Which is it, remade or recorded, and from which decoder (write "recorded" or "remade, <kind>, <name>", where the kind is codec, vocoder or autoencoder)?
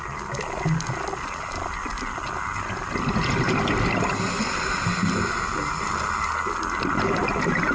recorded